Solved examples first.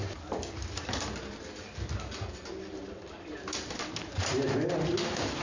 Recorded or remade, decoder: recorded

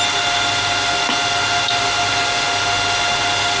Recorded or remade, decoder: recorded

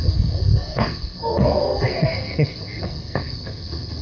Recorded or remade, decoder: remade, codec, SNAC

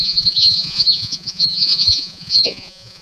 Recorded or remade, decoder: remade, vocoder, Vocos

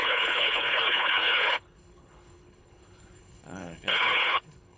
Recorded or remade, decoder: remade, codec, HILCodec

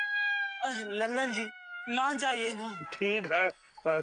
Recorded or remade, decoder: remade, codec, SNAC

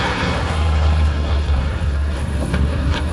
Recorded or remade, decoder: remade, codec, SNAC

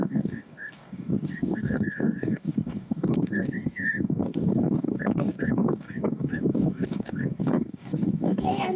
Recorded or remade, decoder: remade, codec, DAC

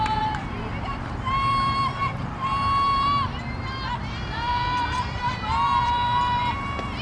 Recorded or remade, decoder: remade, vocoder, BigVGAN v2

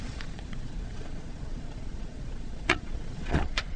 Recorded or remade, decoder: remade, vocoder, Vocos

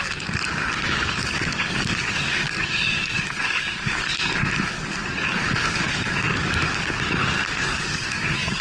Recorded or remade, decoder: remade, codec, DAC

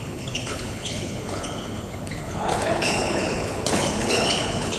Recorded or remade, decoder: remade, codec, HILCodec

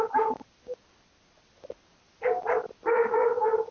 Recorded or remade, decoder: recorded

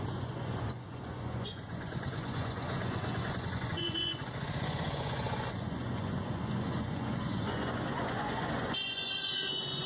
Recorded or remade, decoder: remade, vocoder, Vocos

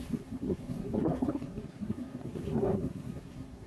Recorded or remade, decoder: remade, codec, SNAC